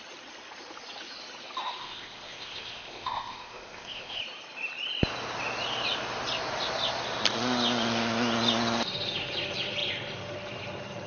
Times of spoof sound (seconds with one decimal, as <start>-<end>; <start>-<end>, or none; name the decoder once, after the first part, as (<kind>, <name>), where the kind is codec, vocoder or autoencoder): 1.8-4.2 (codec, ZipCodec)